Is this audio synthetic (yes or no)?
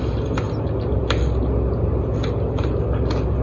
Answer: no